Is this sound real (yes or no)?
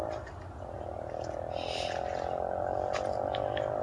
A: yes